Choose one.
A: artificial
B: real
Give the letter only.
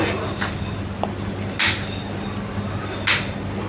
B